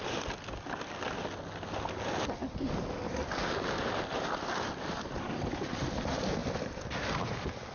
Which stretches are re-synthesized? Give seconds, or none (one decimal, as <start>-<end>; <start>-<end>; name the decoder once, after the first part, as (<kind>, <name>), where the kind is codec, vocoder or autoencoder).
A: none